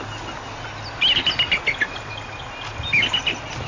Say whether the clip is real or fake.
real